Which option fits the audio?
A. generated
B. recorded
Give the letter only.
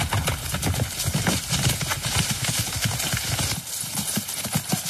B